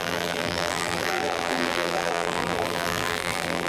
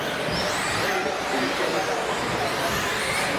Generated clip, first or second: first